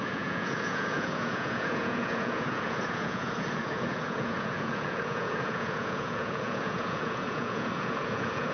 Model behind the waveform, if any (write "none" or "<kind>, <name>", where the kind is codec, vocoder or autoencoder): vocoder, Vocos